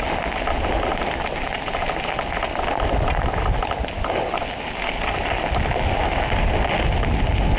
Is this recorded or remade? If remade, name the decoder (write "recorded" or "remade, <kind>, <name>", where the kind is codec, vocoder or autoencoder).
recorded